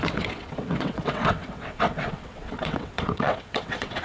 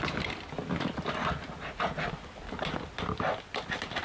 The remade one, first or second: first